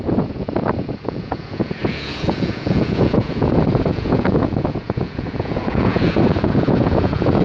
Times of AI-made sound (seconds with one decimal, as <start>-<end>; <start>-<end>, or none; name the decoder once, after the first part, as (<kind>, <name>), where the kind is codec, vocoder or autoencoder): 0.0-7.4 (vocoder, Vocos)

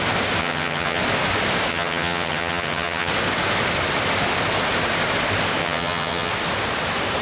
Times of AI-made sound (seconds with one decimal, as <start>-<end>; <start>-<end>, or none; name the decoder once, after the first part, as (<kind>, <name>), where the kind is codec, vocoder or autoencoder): 0.4-1.0 (vocoder, HiFi-GAN); 1.7-3.1; 5.6-6.3

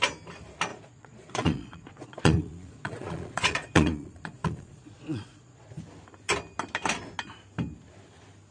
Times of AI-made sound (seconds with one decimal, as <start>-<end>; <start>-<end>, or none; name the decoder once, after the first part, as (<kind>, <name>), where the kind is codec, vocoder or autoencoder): 0.7-5.8 (vocoder, Vocos)